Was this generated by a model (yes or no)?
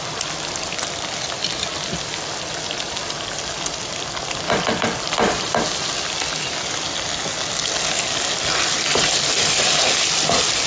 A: no